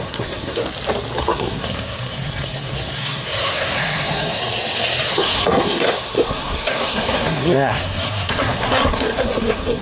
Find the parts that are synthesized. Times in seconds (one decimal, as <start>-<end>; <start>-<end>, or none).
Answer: 0.0-0.6; 1.2-4.4; 5.1-9.8